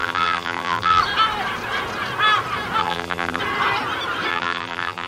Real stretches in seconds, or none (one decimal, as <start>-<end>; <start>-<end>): 1.0-2.8; 3.4-4.3